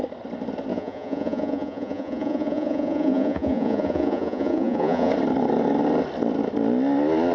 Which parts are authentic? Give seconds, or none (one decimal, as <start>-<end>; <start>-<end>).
0.0-0.7; 5.1-7.3